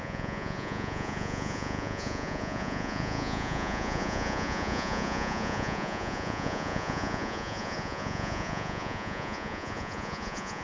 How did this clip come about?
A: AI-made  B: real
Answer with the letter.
A